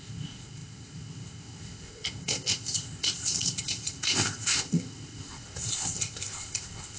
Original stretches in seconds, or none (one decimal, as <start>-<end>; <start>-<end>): none